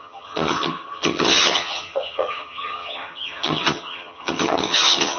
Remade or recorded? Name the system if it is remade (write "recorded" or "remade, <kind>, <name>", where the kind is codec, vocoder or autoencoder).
remade, vocoder, HiFi-GAN